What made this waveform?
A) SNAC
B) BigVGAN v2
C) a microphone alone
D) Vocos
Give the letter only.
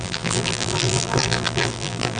B